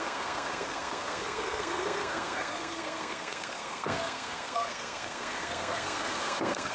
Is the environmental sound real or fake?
fake